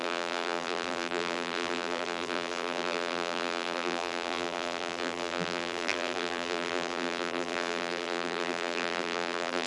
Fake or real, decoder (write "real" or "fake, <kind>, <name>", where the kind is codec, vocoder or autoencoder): fake, vocoder, BigVGAN v2